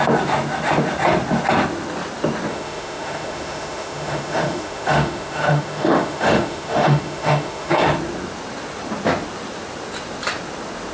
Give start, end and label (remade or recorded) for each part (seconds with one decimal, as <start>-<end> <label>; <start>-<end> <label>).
0.0-2.5 recorded; 2.5-7.7 remade; 7.7-10.9 recorded